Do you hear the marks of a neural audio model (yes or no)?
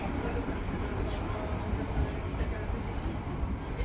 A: no